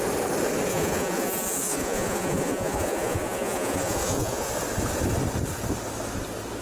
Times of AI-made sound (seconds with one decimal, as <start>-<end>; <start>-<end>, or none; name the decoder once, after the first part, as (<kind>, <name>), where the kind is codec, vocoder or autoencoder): 0.7-4.5 (vocoder, Vocos)